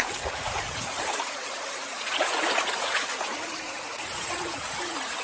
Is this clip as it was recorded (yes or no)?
no